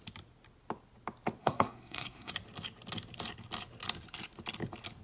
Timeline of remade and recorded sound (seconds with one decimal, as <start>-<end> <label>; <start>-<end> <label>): 0.0-1.4 recorded; 1.4-2.3 remade; 2.3-5.0 recorded